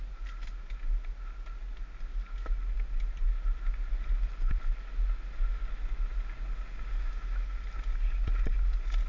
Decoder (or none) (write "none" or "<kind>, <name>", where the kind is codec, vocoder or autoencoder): none